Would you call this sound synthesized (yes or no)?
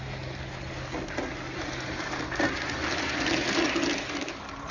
no